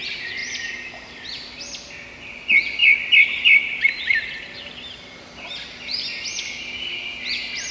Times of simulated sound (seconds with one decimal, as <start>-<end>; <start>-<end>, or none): 0.4-1.9; 2.8-4.7